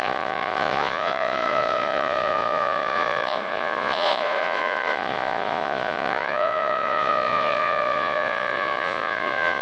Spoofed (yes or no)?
yes